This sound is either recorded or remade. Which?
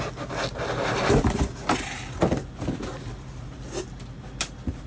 recorded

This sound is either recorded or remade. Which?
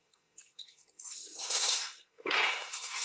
remade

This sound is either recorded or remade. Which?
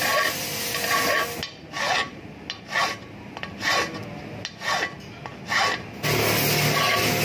recorded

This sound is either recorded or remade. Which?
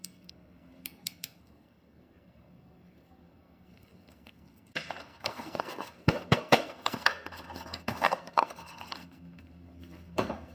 remade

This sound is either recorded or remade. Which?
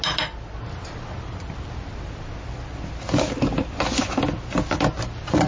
recorded